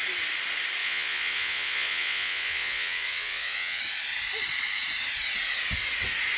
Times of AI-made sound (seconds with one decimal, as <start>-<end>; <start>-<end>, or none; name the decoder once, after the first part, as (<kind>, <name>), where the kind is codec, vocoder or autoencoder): 0.8-3.8 (vocoder, WaveNeXt)